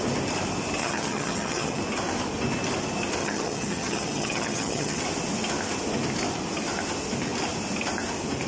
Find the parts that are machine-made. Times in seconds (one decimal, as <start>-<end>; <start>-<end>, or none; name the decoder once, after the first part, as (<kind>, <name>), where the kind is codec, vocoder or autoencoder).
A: 0.8-1.8 (vocoder, HiFi-GAN); 3.2-5.0